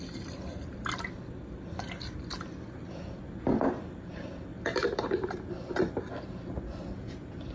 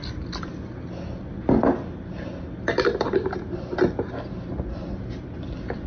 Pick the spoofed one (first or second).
first